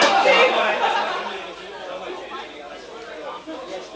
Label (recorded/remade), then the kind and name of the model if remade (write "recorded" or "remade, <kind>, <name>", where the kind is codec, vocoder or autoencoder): recorded